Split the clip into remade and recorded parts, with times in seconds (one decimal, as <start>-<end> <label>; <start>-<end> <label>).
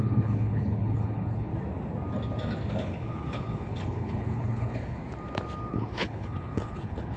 0.0-1.5 remade; 1.5-2.7 recorded; 2.7-5.0 remade; 5.0-5.7 recorded; 5.7-7.2 remade